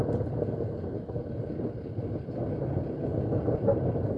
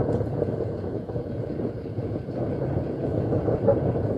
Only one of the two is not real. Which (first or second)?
second